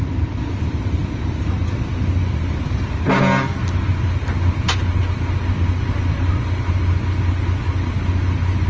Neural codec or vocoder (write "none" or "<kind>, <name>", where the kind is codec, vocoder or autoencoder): none